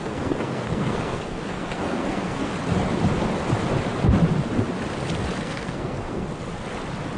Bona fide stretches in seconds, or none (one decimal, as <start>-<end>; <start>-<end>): 2.5-5.4; 6.3-7.2